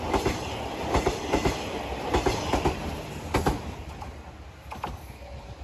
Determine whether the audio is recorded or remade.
recorded